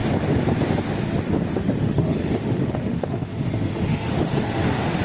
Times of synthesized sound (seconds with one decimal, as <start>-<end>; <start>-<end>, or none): 1.8-5.0